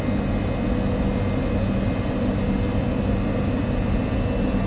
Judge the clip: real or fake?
real